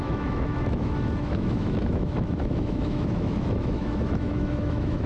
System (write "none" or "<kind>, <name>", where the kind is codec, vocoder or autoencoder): autoencoder, DAC-VAE